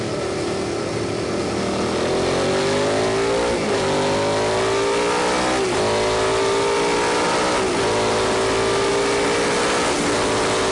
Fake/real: real